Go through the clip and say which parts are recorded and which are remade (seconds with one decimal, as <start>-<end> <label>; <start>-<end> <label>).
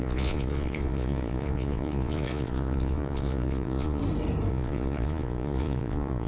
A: 0.0-4.0 remade; 4.0-4.5 recorded; 4.5-6.3 remade